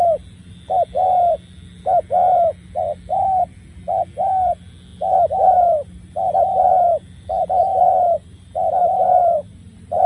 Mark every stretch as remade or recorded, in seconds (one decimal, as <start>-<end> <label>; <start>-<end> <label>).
0.0-8.8 recorded; 8.8-9.6 remade; 9.6-10.1 recorded